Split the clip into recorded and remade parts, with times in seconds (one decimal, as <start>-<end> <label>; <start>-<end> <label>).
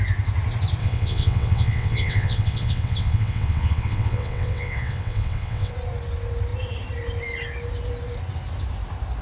0.0-0.8 recorded; 0.8-5.7 remade; 5.7-9.2 recorded